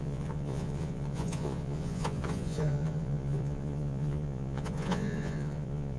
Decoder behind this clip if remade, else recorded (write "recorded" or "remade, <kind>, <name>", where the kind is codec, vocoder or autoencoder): remade, vocoder, Vocos